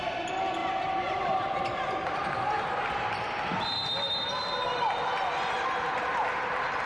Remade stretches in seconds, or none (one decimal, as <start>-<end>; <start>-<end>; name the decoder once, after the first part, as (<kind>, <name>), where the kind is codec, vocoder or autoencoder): none